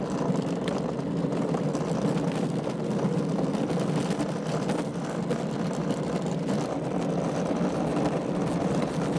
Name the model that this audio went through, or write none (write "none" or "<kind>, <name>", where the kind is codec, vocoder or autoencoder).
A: none